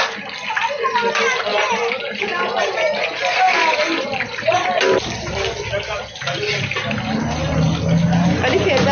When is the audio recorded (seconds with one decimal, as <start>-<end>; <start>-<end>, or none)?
0.0-1.5; 5.3-8.9